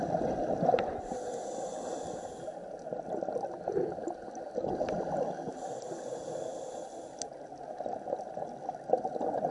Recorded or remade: recorded